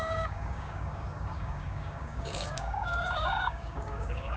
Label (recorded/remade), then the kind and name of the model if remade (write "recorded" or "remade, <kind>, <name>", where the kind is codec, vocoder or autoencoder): remade, codec, DAC